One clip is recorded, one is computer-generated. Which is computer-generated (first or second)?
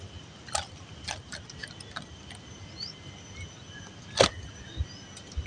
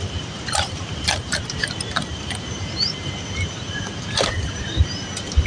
second